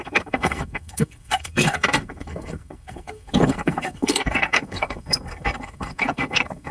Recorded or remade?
remade